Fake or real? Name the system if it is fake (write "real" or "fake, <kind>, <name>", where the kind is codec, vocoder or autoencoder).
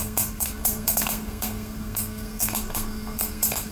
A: fake, codec, SNAC